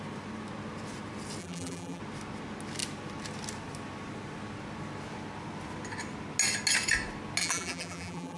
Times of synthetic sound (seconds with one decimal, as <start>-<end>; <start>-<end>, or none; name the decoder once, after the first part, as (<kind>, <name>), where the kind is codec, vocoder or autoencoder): 1.4-2.0 (vocoder, BigVGAN v2); 7.4-8.4